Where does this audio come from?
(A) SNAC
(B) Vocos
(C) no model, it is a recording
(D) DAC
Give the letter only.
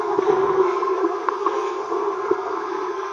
A